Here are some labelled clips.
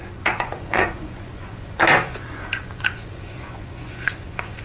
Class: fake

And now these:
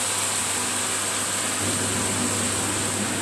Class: real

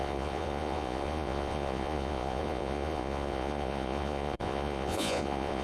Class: fake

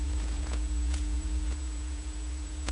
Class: fake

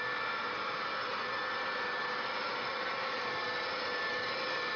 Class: real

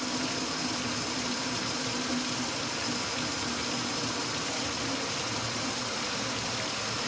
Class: real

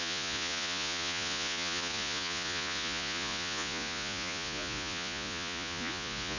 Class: fake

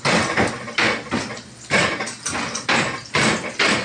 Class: real